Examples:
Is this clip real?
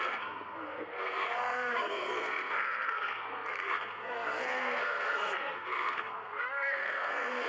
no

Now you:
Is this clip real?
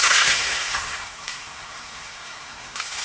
no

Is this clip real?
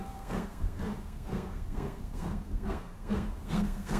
no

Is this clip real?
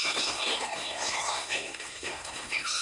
no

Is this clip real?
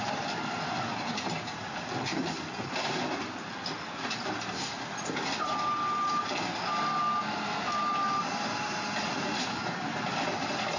yes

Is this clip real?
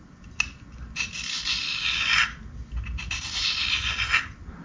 yes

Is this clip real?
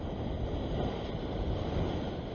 yes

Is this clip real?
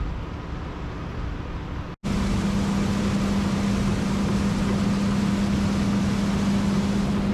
yes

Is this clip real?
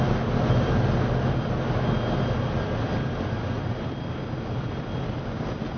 yes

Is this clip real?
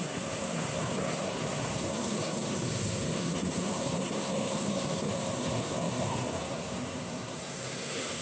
no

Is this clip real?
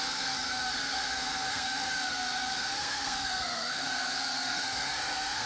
no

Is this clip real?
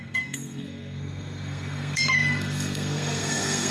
no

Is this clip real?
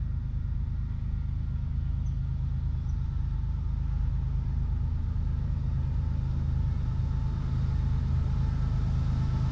yes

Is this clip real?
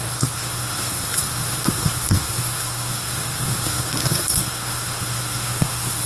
no